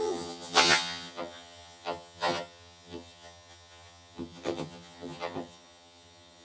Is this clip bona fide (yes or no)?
no